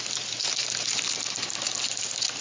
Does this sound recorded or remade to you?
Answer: recorded